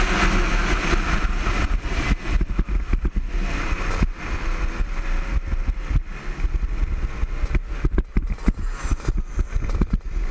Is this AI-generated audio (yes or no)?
no